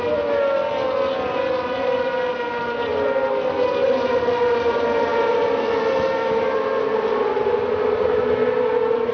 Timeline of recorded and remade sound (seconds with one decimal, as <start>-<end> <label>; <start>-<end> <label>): 0.0-9.1 recorded